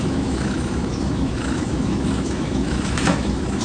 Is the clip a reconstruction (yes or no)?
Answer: yes